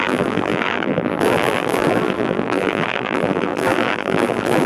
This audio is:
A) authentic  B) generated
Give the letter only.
B